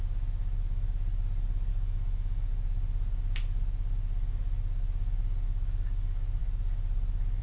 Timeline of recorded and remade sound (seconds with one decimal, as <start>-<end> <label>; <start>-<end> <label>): 0.0-1.7 recorded; 1.7-2.5 remade; 2.5-7.4 recorded